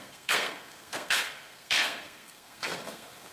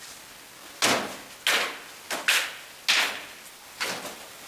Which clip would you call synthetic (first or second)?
first